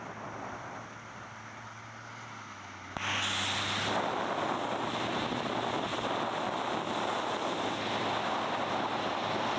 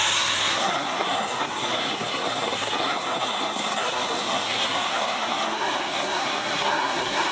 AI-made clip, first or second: second